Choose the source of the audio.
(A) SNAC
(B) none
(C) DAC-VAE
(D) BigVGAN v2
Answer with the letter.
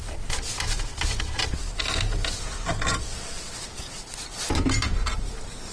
B